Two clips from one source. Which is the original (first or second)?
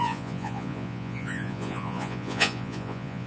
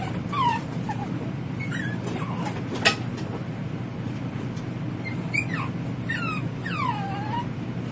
second